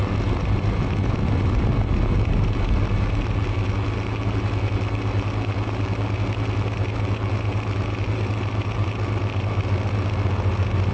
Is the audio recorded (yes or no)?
yes